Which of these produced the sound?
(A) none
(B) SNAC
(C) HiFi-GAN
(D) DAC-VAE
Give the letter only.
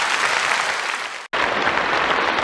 A